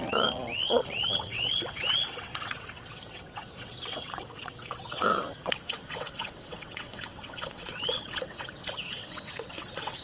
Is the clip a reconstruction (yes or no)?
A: yes